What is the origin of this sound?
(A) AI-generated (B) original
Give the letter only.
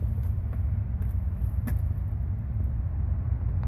B